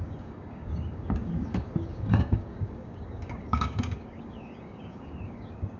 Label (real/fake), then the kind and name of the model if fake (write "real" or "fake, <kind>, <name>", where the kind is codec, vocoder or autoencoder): fake, codec, DAC